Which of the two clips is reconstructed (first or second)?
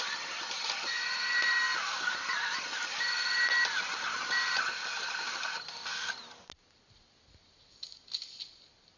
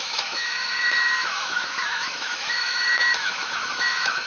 second